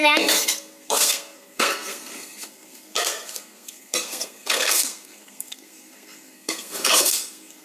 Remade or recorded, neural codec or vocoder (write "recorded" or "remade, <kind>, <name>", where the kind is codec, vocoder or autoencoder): remade, codec, SNAC